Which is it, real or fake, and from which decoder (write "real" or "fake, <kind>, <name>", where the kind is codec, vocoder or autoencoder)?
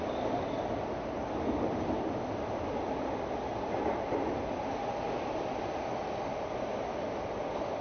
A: real